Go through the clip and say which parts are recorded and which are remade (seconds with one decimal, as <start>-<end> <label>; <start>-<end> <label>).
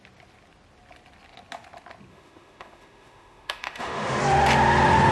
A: 0.0-2.1 recorded; 2.1-4.2 remade; 4.2-5.1 recorded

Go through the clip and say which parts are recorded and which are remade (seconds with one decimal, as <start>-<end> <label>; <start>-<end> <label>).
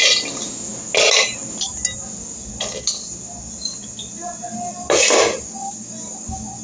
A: 0.0-6.6 recorded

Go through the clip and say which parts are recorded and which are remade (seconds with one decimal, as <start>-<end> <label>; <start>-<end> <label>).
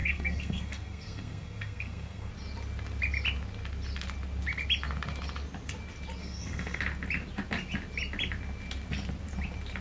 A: 0.0-2.3 remade; 2.3-6.2 recorded; 6.2-6.8 remade; 6.8-9.8 recorded